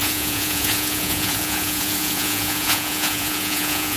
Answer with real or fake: fake